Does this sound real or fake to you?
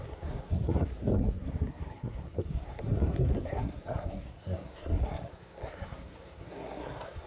fake